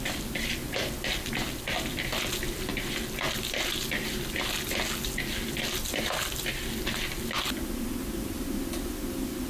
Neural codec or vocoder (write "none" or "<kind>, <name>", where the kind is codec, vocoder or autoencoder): none